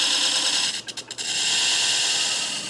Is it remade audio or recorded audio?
recorded